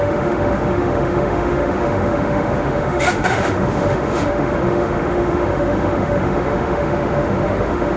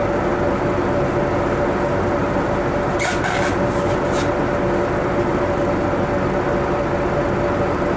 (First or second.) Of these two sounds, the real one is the second